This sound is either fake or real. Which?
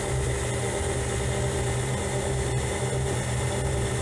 real